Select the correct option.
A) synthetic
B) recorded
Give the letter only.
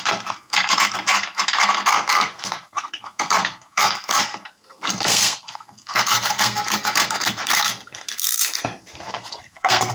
A